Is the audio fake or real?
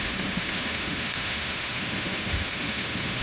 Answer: fake